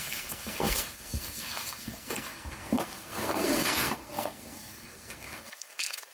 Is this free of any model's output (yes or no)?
no